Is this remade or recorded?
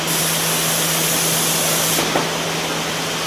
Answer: recorded